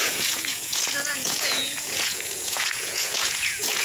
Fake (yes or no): yes